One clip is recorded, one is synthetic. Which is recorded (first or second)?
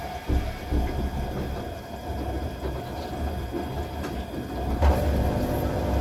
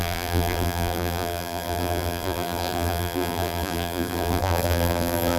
first